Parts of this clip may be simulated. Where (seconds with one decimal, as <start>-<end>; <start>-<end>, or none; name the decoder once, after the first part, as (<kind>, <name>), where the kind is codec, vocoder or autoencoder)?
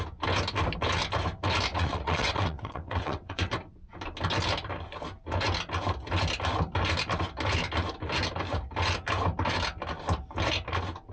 1.7-3.5 (vocoder, WaveNeXt)